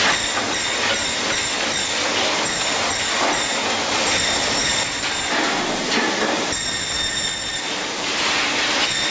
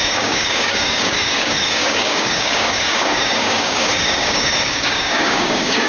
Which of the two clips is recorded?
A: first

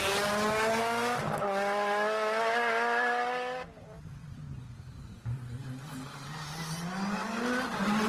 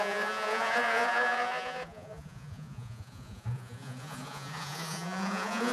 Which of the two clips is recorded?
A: first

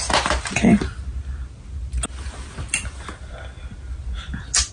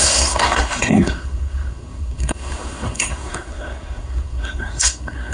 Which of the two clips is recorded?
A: first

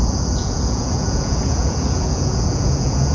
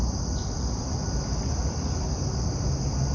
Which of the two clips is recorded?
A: second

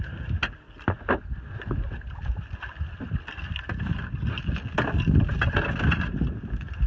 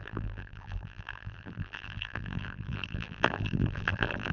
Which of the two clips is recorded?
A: first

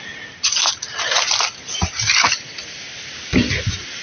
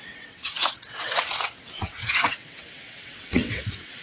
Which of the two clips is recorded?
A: first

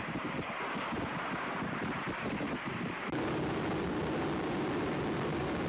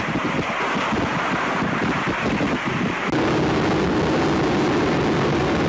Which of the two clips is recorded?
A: second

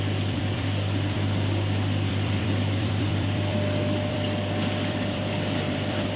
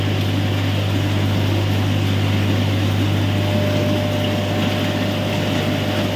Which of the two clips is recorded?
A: second